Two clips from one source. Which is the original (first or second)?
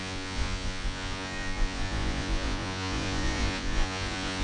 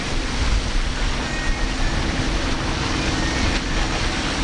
second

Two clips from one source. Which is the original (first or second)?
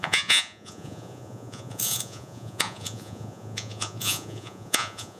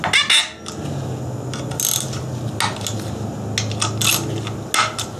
second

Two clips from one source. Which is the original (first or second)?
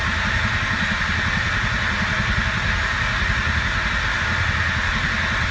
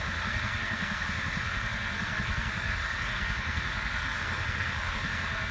first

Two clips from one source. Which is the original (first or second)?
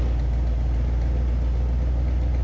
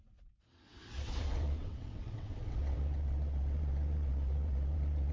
first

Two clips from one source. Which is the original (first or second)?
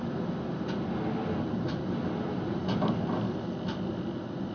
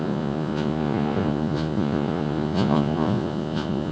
first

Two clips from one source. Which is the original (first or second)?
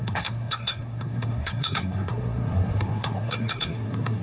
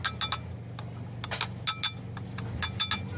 second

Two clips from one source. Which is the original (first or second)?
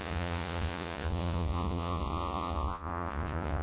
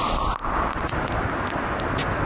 second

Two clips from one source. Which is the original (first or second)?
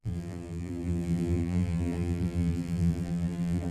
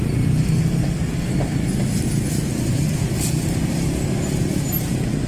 second